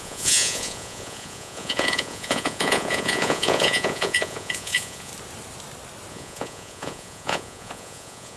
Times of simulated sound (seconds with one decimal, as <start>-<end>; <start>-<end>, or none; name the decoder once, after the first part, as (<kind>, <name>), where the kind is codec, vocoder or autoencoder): 0.0-5.1 (vocoder, Vocos); 6.1-8.4